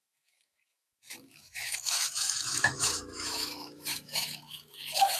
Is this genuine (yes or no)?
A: no